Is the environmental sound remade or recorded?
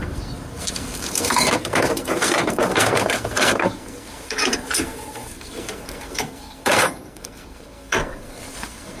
remade